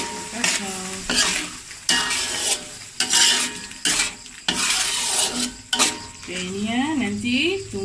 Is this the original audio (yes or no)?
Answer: yes